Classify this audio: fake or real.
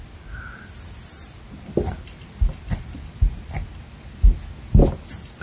real